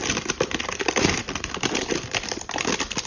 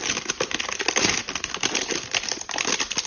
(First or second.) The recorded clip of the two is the second